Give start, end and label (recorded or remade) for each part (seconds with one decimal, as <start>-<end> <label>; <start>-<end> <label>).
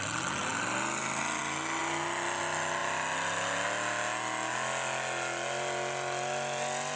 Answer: 0.0-7.0 recorded